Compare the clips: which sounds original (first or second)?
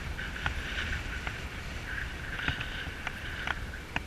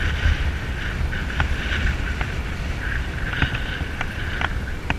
second